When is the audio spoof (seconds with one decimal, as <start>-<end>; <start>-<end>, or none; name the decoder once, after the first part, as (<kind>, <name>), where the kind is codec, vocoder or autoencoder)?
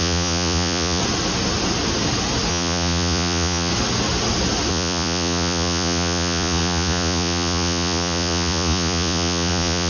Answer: 0.0-1.0 (vocoder, Vocos); 2.5-3.7; 4.7-9.9